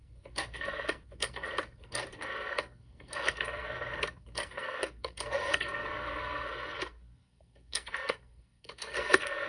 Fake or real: fake